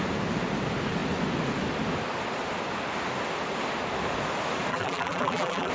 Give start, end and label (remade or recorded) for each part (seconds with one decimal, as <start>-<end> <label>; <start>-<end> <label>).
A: 0.0-4.7 recorded; 4.7-5.7 remade

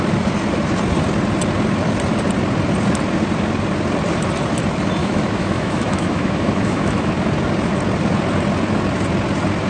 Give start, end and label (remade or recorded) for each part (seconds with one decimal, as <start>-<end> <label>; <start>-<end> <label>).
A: 0.0-5.0 recorded; 5.0-7.1 remade; 7.1-9.7 recorded